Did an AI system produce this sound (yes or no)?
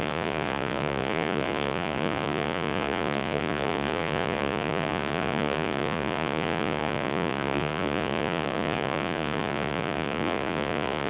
yes